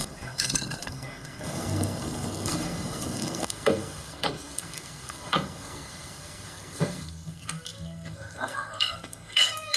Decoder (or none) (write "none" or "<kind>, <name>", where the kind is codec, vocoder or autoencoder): codec, SNAC